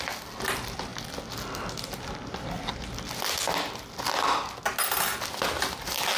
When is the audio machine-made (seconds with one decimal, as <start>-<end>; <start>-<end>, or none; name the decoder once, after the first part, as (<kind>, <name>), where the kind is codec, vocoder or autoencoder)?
none